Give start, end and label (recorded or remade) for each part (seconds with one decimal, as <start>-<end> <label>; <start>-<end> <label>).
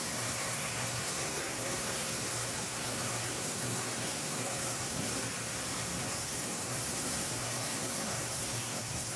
0.0-5.1 remade; 5.1-6.0 recorded; 6.0-9.2 remade